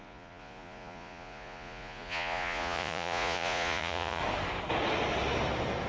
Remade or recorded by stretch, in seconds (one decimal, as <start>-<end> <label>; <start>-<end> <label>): 0.0-4.2 remade; 4.2-5.9 recorded